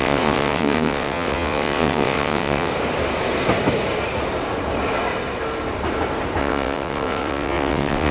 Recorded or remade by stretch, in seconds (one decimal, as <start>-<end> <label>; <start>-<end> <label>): 0.0-2.7 remade; 2.7-6.4 recorded; 6.4-8.1 remade